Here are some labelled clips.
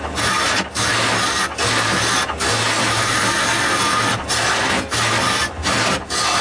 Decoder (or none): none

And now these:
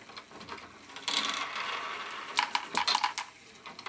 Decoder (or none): none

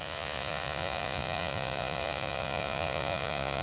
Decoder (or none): vocoder, Vocos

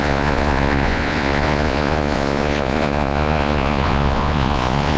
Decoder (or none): vocoder, Vocos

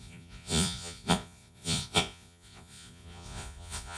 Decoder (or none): vocoder, Vocos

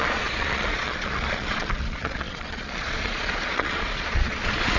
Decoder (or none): vocoder, Vocos